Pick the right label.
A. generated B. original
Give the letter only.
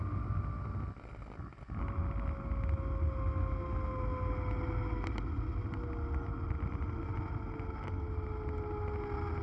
B